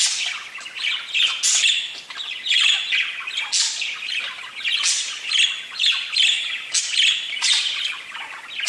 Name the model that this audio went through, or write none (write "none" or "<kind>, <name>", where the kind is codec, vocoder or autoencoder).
none